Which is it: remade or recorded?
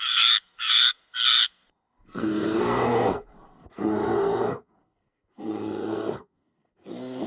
remade